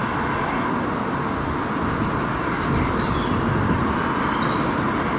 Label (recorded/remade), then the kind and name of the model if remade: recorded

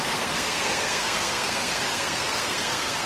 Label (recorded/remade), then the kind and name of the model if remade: remade, codec, SNAC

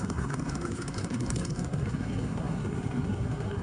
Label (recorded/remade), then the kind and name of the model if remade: remade, codec, SNAC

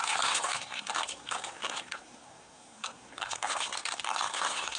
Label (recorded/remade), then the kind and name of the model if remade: remade, codec, SNAC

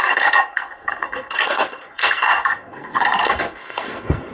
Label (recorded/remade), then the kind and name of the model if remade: remade, codec, SNAC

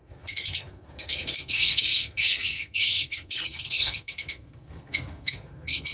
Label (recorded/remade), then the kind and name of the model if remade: remade, codec, SNAC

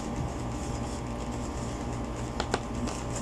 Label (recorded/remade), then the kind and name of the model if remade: recorded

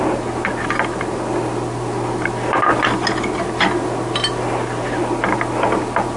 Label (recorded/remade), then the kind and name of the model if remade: recorded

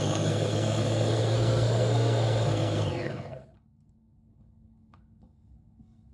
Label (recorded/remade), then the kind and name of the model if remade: remade, codec, SNAC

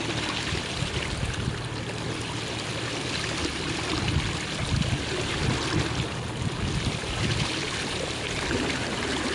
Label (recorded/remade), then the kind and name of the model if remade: recorded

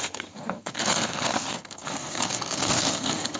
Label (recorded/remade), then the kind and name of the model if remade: remade, codec, SNAC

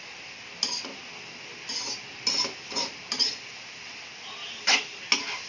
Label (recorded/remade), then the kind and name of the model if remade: recorded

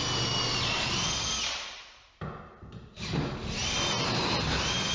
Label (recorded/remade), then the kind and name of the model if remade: recorded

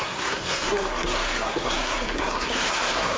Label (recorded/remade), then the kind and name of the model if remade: remade, codec, SNAC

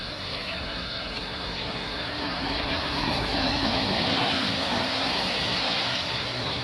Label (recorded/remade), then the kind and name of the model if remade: remade, codec, SNAC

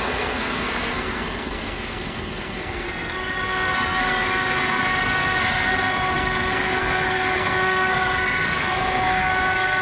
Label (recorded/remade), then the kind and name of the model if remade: remade, codec, SNAC